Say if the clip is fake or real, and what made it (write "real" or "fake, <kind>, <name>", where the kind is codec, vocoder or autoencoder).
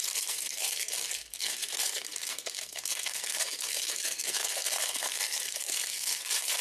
fake, codec, SNAC